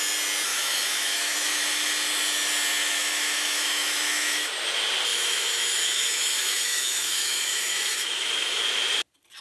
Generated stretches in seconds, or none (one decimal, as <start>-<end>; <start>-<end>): 0.5-1.9; 2.8-4.5; 5.1-8.6

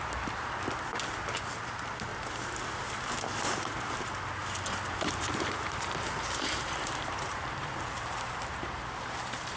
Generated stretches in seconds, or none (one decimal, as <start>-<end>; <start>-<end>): 0.0-0.9; 1.6-2.1; 3.5-4.4; 4.9-9.6

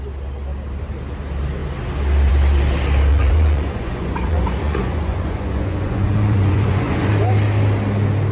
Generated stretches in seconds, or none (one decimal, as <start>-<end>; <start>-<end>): 3.1-7.1

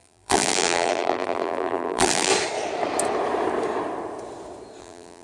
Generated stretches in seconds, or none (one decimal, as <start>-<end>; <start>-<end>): 0.0-2.3; 4.8-5.2

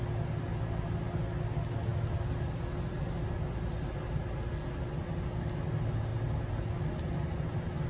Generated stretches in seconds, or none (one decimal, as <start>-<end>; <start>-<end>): none

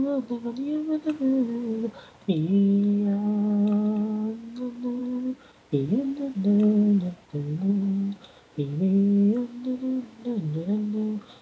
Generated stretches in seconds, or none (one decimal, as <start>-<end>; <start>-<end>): 7.7-11.4

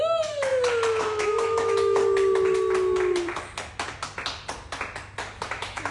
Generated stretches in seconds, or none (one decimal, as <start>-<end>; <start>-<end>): 0.0-0.5; 1.0-2.0; 5.5-5.9